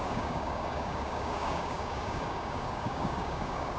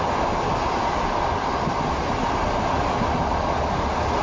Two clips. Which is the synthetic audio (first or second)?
first